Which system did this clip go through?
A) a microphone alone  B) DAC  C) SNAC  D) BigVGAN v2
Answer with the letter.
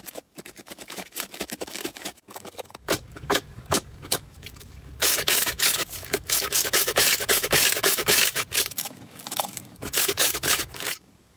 B